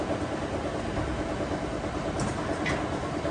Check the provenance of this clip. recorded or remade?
recorded